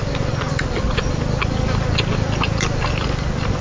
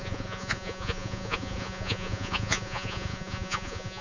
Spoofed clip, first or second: second